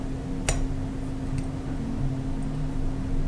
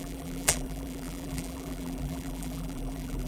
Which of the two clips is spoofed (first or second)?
second